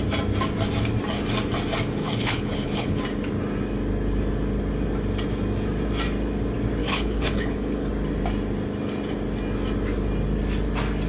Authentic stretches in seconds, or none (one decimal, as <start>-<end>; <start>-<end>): 0.0-2.0; 3.0-6.8; 7.9-11.1